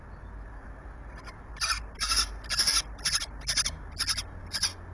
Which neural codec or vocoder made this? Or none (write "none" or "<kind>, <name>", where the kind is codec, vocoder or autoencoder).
none